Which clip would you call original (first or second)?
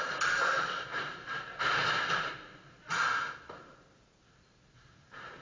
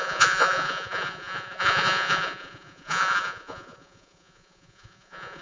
first